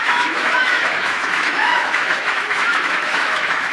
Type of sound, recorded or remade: remade